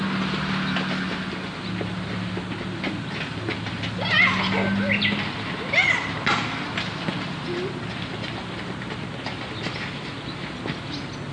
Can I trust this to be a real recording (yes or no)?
yes